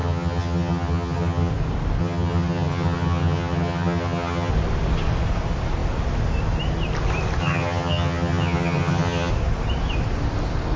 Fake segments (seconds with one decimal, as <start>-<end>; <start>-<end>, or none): 0.0-1.5; 2.0-4.5; 7.4-9.3